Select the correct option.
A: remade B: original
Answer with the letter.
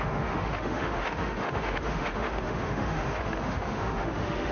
A